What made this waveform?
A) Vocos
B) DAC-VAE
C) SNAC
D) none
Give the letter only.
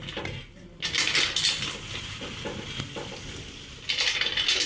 D